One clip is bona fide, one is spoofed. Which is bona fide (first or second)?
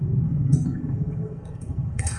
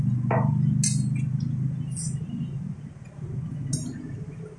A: second